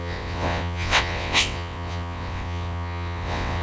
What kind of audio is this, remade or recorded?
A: remade